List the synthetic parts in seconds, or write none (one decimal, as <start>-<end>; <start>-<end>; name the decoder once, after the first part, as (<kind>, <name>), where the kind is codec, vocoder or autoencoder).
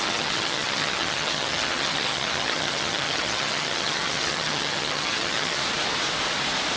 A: 0.0-5.6 (vocoder, HiFi-GAN)